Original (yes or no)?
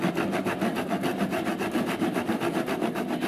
yes